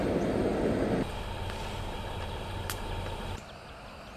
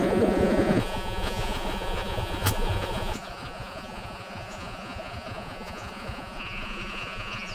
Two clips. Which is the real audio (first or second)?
first